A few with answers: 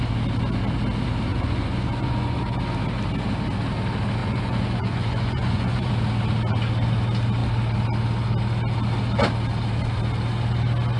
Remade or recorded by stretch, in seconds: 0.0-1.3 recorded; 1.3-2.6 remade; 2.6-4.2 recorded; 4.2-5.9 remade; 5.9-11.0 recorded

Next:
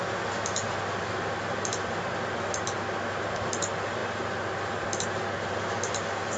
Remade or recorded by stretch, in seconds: 0.0-6.4 recorded